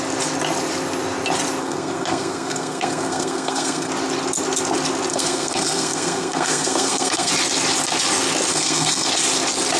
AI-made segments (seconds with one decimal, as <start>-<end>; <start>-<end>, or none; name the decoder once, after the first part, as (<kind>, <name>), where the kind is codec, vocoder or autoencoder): 1.6-3.9 (codec, SNAC); 5.1-7.3; 8.5-9.1